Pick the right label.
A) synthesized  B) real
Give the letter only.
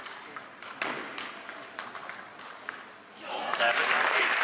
A